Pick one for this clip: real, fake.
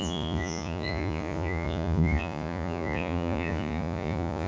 fake